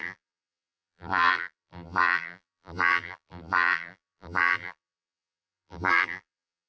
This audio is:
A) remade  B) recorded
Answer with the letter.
A